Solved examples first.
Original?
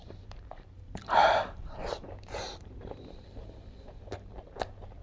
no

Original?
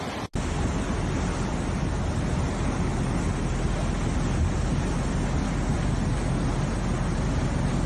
yes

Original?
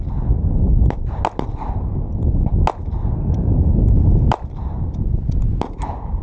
yes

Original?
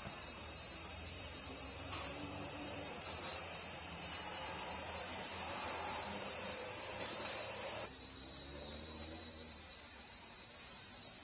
no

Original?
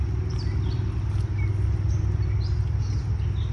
yes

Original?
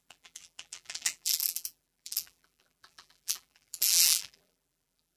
no